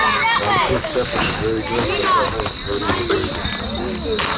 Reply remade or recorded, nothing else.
recorded